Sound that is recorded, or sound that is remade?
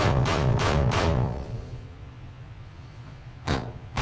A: remade